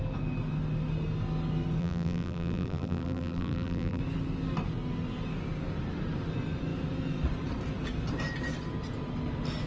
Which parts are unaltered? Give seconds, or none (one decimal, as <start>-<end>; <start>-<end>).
0.0-1.8; 4.0-9.7